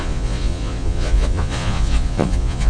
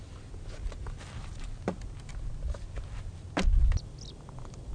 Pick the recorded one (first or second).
second